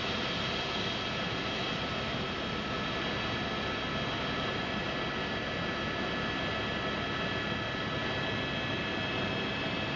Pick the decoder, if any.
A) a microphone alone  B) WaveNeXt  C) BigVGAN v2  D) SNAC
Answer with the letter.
A